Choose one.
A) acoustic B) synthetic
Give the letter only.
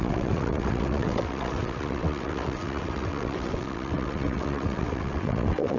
B